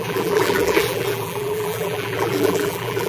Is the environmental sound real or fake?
fake